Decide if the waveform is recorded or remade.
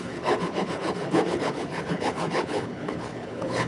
remade